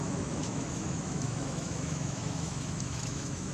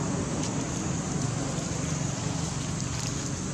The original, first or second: second